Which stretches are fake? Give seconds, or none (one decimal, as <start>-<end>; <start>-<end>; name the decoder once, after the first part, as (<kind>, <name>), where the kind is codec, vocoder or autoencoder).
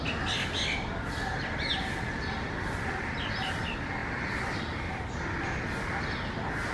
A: none